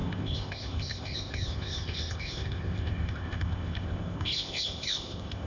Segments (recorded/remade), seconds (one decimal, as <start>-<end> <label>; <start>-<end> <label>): 0.0-5.5 remade